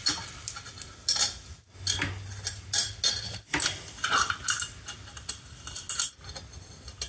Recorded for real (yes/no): yes